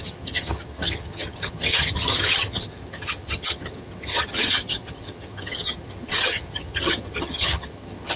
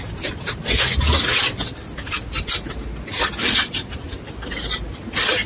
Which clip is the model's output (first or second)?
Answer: first